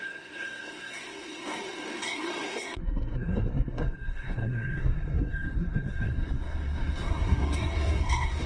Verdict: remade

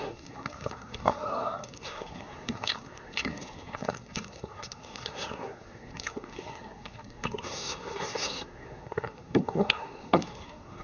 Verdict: remade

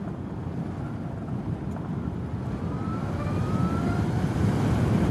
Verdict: recorded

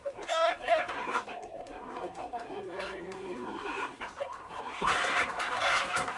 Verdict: remade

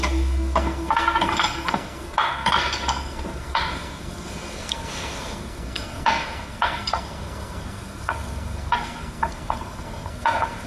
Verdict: remade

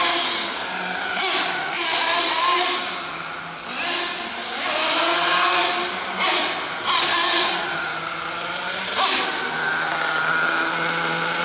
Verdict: recorded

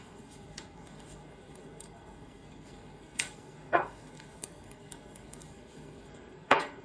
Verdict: remade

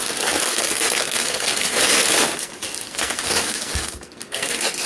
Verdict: remade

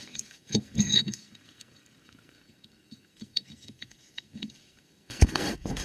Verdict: remade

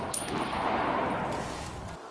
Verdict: recorded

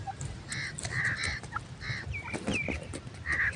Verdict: recorded